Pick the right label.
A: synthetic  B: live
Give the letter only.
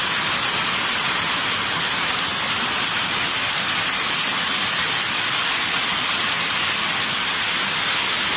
B